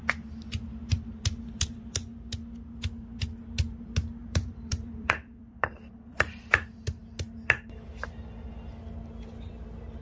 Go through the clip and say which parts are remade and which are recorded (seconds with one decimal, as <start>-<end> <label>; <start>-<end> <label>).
0.0-4.2 recorded; 4.2-6.5 remade; 6.5-10.0 recorded